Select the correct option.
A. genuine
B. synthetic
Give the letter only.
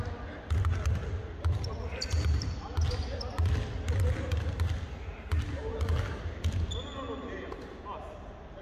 A